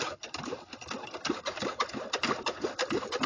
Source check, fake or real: real